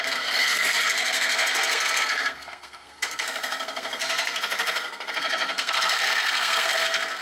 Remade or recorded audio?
remade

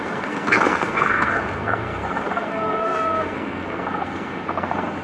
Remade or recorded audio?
remade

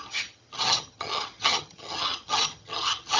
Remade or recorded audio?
remade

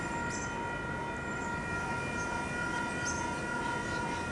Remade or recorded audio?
recorded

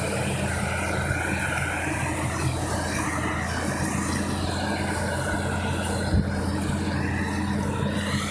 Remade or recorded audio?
recorded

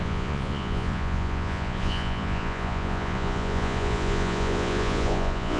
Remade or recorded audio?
remade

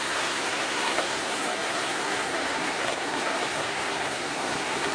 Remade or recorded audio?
remade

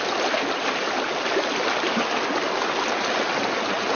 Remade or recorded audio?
recorded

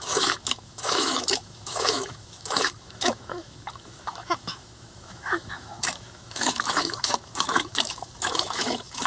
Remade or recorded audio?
remade